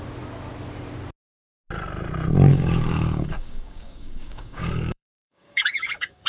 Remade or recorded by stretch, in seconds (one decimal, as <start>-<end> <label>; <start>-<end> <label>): 0.0-2.5 recorded; 2.5-6.3 remade